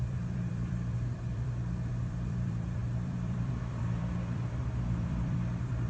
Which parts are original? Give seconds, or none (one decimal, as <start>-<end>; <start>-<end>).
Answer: none